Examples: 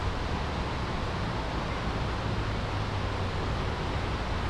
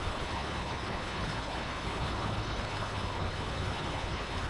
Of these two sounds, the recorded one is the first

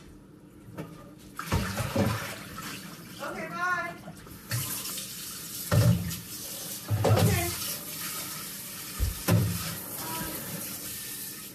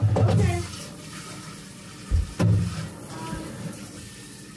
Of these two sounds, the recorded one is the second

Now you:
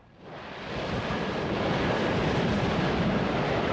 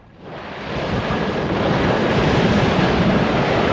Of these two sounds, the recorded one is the first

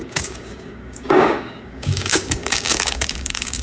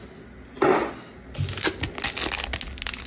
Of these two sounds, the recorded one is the second